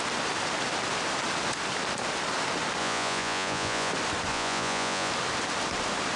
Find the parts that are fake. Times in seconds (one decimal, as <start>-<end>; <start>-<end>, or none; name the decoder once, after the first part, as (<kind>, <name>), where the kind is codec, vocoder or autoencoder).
2.8-3.9 (vocoder, Vocos); 4.3-5.1